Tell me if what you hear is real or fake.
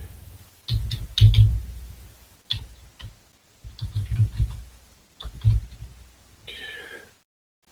real